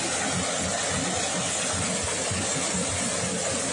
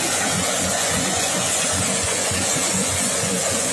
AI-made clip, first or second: second